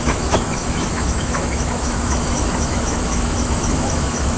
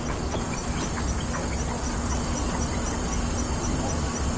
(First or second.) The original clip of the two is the second